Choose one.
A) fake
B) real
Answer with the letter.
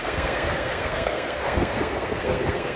A